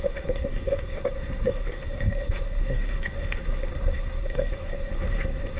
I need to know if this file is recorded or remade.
remade